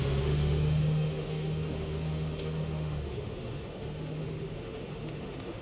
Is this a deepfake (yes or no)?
yes